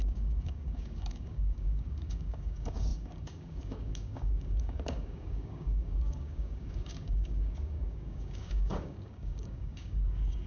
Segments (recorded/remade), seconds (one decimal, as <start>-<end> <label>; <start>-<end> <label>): 0.0-10.5 remade